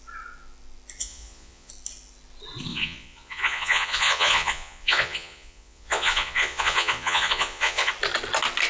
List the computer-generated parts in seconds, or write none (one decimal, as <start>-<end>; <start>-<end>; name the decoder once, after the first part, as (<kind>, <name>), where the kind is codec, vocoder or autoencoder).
1.0-1.7 (vocoder, Vocos); 2.7-7.9

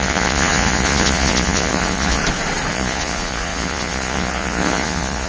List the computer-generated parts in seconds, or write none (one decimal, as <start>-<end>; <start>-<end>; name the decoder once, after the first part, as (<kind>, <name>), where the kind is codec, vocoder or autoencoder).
0.0-2.2 (vocoder, Vocos); 2.7-5.3

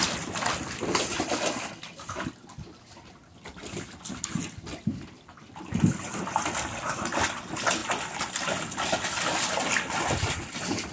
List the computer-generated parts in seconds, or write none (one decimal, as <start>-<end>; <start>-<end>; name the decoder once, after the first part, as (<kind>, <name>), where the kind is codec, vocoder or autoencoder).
none

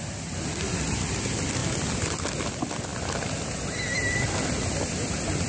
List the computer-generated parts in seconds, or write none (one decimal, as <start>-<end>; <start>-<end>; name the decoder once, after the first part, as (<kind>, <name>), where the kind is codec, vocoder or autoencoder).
0.0-1.6 (vocoder, BigVGAN v2); 2.5-5.5